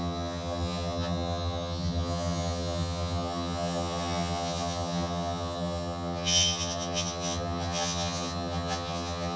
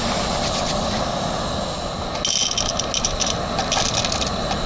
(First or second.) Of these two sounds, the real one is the second